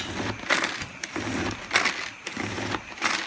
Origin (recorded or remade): recorded